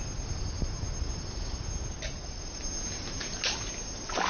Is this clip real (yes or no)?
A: yes